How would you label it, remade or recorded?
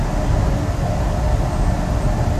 recorded